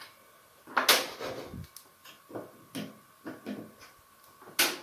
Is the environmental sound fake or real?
real